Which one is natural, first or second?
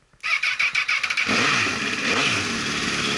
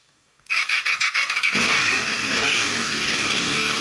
first